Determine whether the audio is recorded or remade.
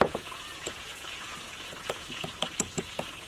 remade